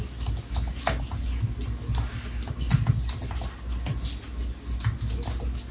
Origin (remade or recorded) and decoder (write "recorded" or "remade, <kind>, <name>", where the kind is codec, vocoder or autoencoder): recorded